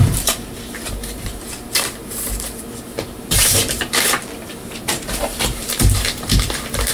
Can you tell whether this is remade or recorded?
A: remade